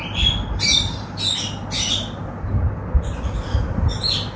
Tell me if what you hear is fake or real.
real